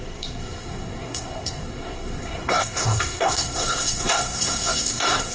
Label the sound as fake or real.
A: fake